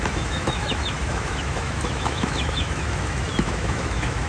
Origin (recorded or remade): remade